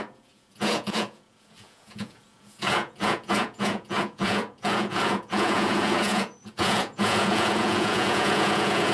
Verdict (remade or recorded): remade